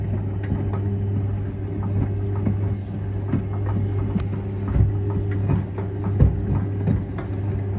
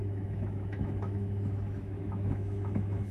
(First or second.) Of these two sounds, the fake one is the second